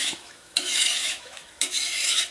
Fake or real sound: fake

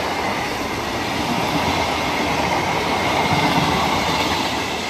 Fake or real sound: real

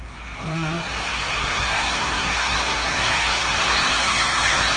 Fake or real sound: fake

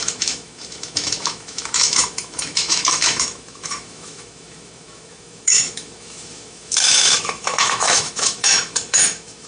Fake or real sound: fake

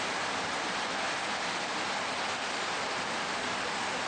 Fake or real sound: real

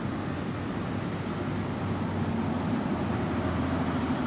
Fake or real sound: real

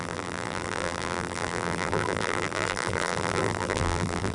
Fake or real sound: fake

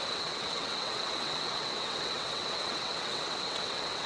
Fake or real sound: fake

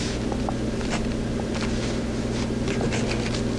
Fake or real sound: real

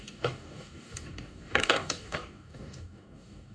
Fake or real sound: fake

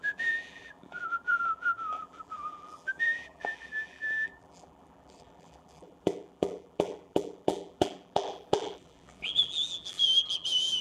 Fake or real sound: fake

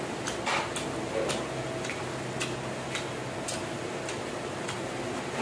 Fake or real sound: real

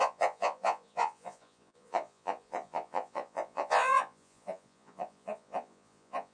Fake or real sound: fake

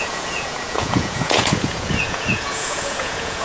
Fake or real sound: fake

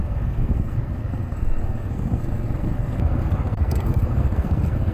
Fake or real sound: fake